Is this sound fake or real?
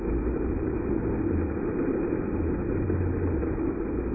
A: real